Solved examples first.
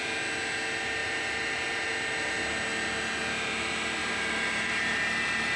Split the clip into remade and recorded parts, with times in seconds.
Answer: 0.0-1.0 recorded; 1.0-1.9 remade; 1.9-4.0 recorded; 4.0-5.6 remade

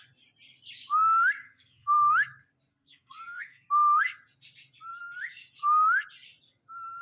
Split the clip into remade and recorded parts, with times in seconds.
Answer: 0.0-1.4 recorded; 1.4-2.1 remade; 2.1-2.7 recorded; 2.7-4.0 remade; 4.0-7.0 recorded

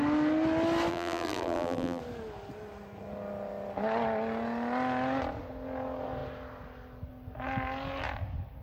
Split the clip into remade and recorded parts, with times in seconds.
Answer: 0.0-0.9 recorded; 0.9-2.0 remade; 2.0-8.6 recorded